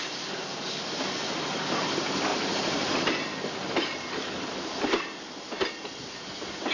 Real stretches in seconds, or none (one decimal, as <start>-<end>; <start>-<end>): 0.0-2.3; 2.9-6.7